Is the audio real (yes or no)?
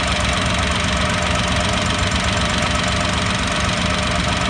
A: yes